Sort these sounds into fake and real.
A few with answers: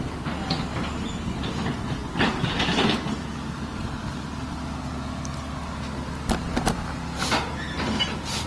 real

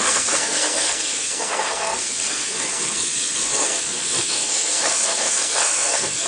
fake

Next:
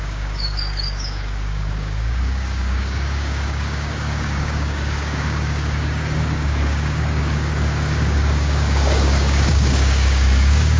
fake